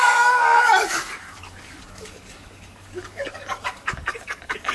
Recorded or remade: remade